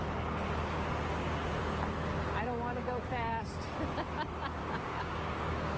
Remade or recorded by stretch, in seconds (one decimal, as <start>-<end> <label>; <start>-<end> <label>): 0.0-2.7 recorded; 2.7-3.4 remade; 3.4-4.6 recorded; 4.6-5.8 remade